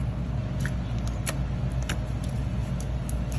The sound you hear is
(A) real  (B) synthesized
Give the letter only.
A